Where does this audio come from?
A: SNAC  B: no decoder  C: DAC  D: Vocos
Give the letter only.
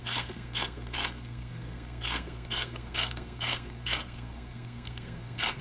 A